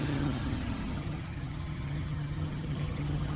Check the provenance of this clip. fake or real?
fake